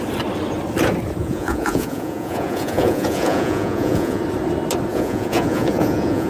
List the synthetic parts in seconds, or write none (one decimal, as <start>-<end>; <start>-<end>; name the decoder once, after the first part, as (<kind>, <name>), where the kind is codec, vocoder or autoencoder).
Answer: 1.2-4.2 (vocoder, Vocos); 4.9-6.3